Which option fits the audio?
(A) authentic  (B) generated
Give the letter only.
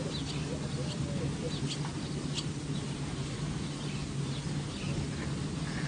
A